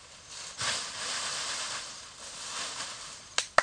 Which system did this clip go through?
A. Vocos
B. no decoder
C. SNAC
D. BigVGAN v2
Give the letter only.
B